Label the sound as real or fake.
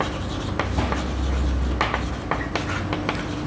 real